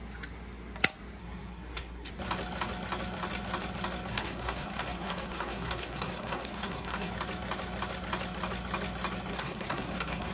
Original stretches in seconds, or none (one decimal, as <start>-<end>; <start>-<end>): 0.0-1.2; 2.1-4.1; 7.1-9.3